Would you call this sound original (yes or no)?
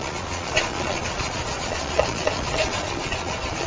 no